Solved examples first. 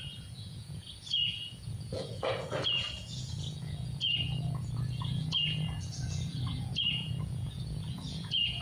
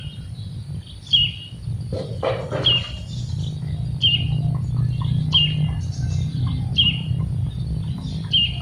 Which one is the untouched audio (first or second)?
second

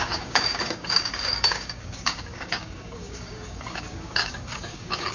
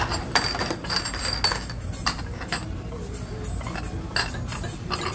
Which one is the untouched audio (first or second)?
second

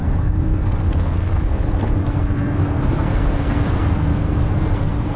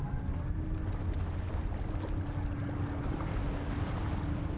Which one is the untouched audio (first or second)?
second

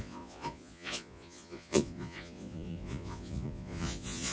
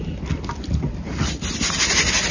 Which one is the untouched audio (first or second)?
second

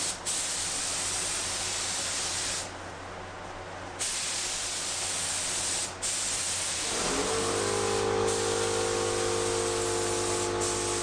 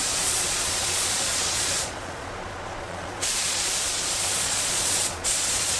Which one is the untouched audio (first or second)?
first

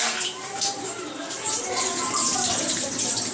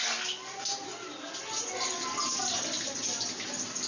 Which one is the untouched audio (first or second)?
second